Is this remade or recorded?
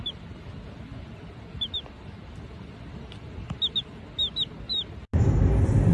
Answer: recorded